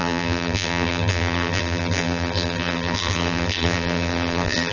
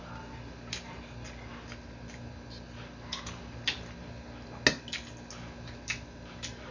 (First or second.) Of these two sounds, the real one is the second